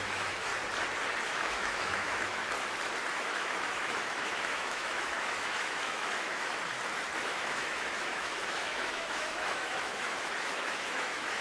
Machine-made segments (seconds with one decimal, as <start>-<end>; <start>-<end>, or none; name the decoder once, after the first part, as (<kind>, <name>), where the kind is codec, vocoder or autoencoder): 0.0-0.5 (autoencoder, DAC-VAE); 1.3-2.4; 3.1-6.4; 7.2-11.4